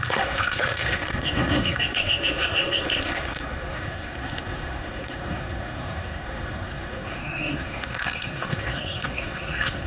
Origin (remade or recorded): remade